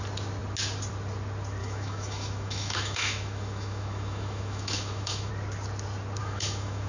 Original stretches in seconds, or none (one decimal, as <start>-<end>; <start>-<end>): 0.0-1.6; 5.3-6.2